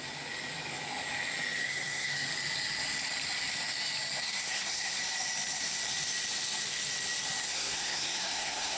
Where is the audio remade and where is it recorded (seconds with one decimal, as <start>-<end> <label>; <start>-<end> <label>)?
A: 0.0-1.6 recorded; 1.6-2.3 remade; 2.3-4.2 recorded; 4.2-5.0 remade; 5.0-7.4 recorded; 7.4-8.8 remade